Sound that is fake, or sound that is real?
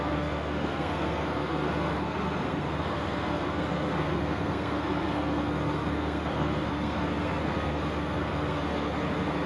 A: fake